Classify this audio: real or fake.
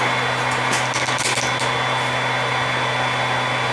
real